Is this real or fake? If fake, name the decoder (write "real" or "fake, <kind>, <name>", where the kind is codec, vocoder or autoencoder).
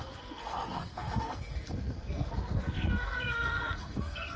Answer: fake, codec, SNAC